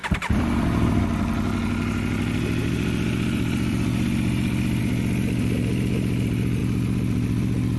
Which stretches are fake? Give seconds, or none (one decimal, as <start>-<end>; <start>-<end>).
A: 0.0-6.6